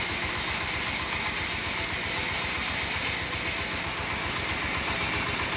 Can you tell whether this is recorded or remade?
recorded